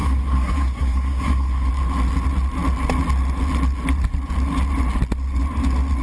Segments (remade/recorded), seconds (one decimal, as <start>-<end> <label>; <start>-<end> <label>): 0.0-1.7 remade; 1.7-6.0 recorded

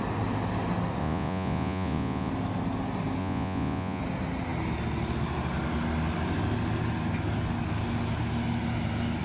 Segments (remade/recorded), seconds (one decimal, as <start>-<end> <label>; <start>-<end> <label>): 0.0-1.0 recorded; 1.0-2.3 remade; 2.3-3.2 recorded; 3.2-4.0 remade; 4.0-9.2 recorded

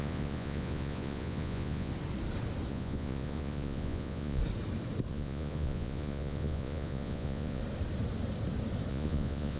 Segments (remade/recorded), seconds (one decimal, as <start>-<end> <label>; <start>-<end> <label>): 0.0-1.9 remade; 1.9-2.7 recorded; 2.7-4.4 remade; 4.4-5.1 recorded; 5.1-7.6 remade; 7.6-8.9 recorded; 8.9-9.6 remade

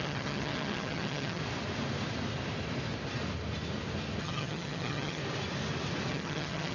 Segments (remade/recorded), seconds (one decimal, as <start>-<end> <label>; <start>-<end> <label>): 0.0-1.4 remade; 1.4-4.2 recorded; 4.2-5.2 remade; 5.2-6.1 recorded; 6.1-6.7 remade

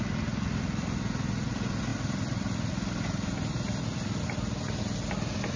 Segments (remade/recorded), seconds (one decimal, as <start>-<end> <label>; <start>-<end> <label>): 0.0-5.6 recorded

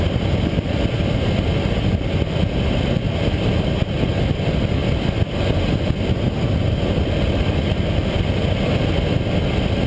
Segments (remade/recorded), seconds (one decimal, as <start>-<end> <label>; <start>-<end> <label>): 0.0-9.9 recorded

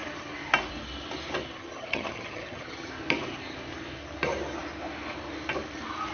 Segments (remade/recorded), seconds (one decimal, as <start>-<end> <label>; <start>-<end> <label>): 0.0-1.6 recorded; 1.6-2.9 remade; 2.9-6.1 recorded

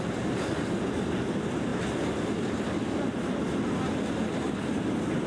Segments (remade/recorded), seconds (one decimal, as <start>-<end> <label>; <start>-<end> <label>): 0.0-5.3 recorded